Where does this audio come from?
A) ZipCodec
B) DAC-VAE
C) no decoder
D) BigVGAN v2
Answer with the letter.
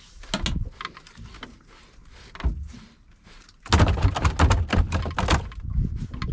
C